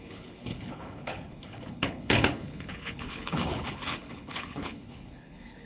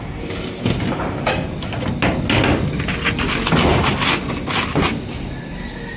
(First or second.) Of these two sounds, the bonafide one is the second